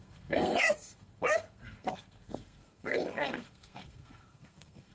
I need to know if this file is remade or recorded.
remade